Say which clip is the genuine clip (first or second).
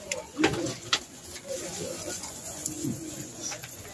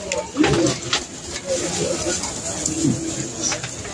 second